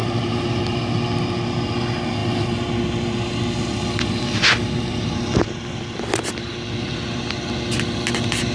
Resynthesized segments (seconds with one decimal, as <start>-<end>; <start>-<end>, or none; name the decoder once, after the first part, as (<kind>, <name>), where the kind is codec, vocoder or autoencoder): 0.0-0.6 (vocoder, BigVGAN v2)